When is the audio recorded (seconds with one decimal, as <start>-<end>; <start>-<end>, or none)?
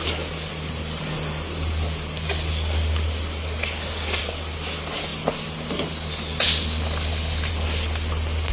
0.0-8.5